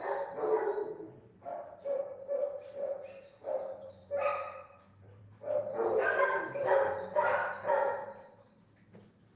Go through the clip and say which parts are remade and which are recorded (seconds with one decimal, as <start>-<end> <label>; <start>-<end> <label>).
0.0-4.3 recorded; 4.3-5.2 remade; 5.2-8.0 recorded; 8.0-8.9 remade; 8.9-9.4 recorded